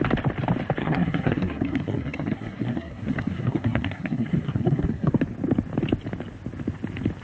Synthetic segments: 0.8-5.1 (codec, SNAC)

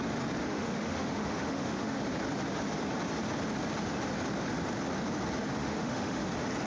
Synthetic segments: 0.4-2.0 (autoencoder, DAC-VAE); 5.6-6.2

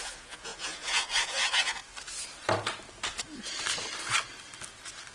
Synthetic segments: 0.0-1.8 (vocoder, Vocos)

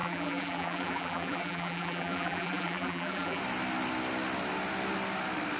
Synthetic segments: 0.0-3.4 (vocoder, BigVGAN v2)

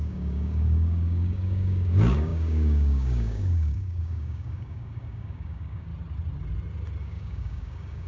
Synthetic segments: 0.0-5.9 (codec, DAC); 7.0-8.1